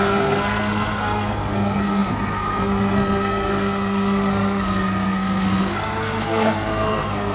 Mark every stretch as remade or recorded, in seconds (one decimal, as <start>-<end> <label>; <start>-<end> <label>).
0.0-7.3 remade